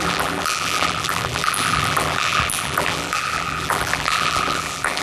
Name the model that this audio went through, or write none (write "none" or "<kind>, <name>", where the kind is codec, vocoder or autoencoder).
vocoder, BigVGAN v2